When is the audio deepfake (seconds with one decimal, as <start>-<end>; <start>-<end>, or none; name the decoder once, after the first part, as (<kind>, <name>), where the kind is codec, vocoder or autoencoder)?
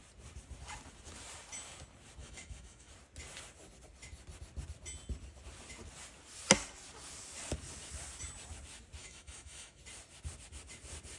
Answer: 2.2-2.9 (autoencoder, DAC-VAE); 9.0-9.8